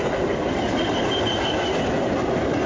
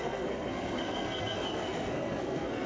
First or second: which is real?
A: first